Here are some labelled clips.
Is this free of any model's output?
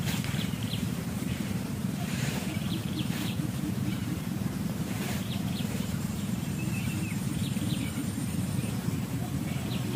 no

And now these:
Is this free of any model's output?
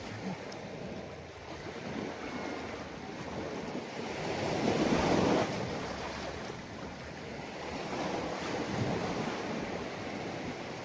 yes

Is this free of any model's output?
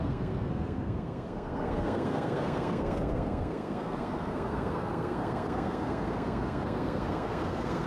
no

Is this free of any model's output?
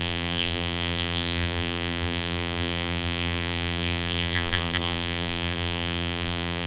no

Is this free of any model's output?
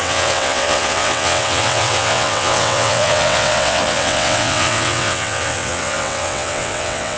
no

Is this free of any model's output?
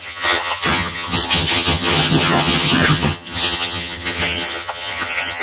no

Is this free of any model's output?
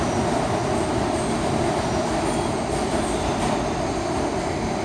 yes